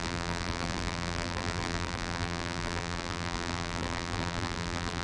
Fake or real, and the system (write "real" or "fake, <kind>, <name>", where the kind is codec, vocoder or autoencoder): fake, vocoder, BigVGAN v2